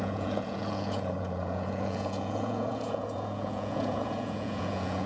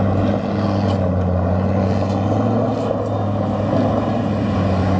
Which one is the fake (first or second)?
first